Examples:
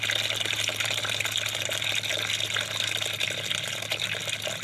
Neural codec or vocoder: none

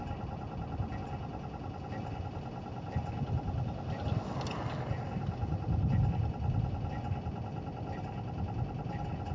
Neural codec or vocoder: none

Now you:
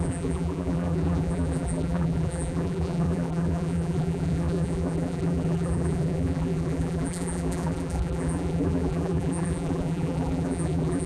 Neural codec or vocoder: vocoder, BigVGAN v2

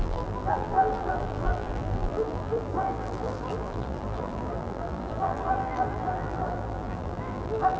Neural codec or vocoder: vocoder, BigVGAN v2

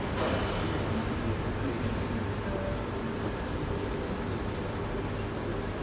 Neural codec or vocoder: none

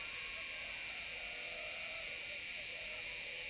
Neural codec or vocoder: none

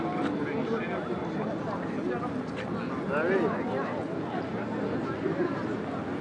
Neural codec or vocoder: none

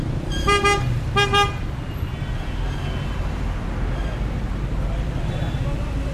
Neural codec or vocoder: none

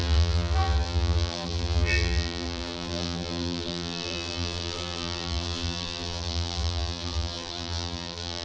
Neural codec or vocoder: vocoder, BigVGAN v2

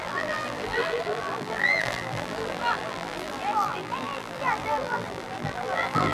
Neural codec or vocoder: vocoder, BigVGAN v2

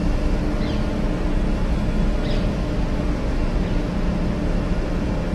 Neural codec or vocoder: none